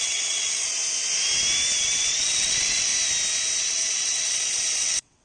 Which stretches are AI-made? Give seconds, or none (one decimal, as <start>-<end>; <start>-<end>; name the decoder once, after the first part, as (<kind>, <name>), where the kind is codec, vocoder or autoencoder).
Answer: 0.0-0.8 (vocoder, WaveNeXt); 1.8-2.9; 3.6-5.2